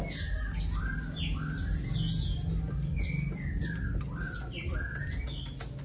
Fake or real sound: real